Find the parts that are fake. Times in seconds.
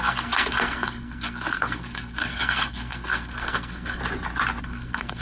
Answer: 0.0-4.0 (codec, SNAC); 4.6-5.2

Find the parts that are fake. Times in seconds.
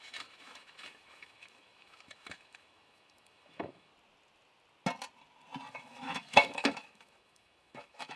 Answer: 0.0-3.9 (autoencoder, DAC-VAE); 5.7-8.2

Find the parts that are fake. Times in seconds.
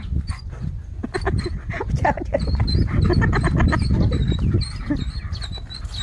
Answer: none